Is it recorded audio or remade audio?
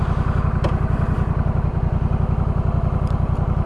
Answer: recorded